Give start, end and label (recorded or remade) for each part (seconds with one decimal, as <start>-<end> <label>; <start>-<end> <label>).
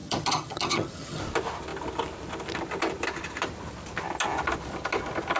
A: 0.0-1.2 remade; 1.2-5.4 recorded